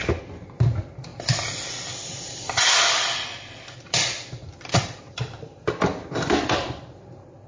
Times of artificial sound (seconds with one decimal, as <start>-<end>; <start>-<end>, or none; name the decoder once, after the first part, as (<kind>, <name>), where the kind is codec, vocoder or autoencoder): 1.1-5.6 (vocoder, BigVGAN v2)